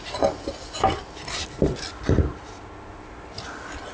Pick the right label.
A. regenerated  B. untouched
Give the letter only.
A